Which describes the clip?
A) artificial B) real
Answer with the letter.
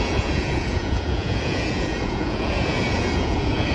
A